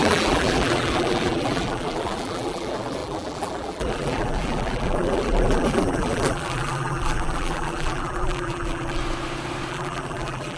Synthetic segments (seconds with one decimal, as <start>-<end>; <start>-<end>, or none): 0.0-9.0; 9.7-10.6